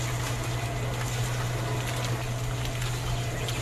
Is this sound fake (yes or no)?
no